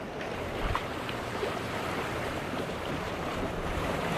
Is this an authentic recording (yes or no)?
no